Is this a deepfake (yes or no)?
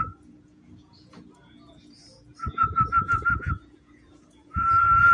yes